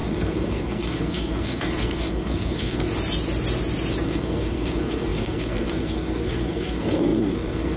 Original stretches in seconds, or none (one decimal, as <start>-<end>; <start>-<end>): 2.9-4.0